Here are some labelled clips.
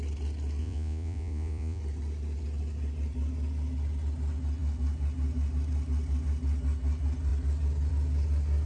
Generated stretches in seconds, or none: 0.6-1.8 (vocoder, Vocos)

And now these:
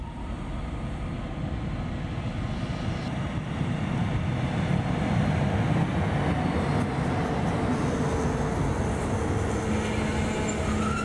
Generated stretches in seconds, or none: none

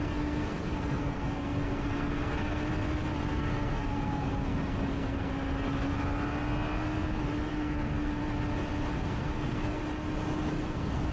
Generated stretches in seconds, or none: 0.0-2.7 (codec, SNAC); 3.3-5.3; 7.5-8.2; 9.0-9.8; 10.5-11.1

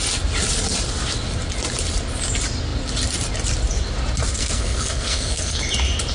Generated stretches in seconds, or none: 4.3-5.6 (codec, SNAC)